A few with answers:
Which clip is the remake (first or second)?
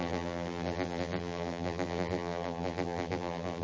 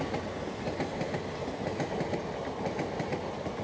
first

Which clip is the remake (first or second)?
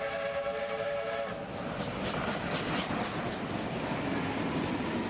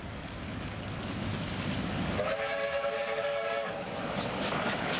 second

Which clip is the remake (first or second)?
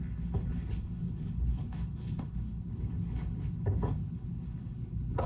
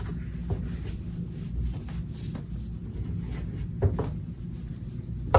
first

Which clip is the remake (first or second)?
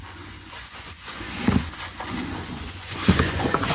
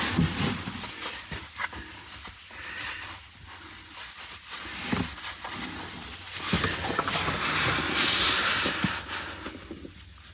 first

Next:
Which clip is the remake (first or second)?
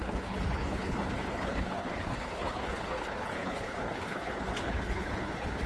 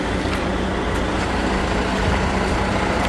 first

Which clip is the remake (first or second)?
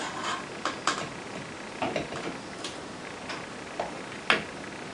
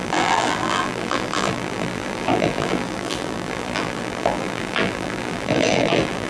second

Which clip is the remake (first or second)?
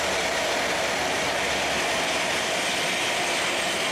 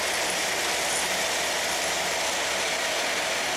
second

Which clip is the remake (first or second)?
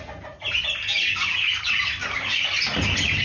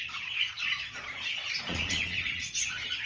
second